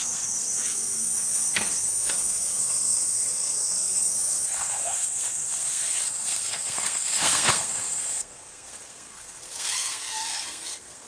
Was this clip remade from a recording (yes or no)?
yes